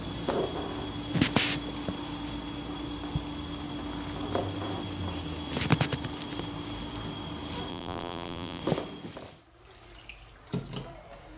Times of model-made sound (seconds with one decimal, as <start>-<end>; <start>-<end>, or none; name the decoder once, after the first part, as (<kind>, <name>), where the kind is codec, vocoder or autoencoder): 7.7-8.6 (vocoder, BigVGAN v2)